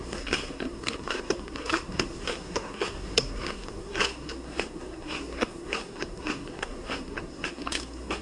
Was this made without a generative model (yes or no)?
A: no